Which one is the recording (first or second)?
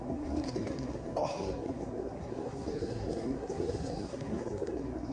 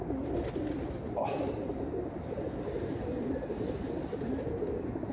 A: second